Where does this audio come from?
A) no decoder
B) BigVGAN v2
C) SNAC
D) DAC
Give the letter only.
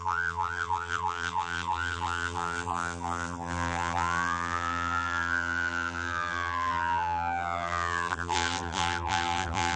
B